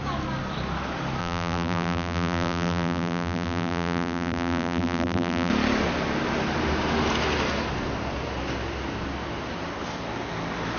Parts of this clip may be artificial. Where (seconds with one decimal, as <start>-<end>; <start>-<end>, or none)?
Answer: 1.2-5.5